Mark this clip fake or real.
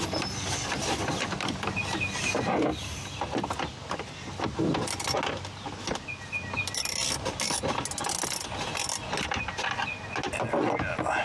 real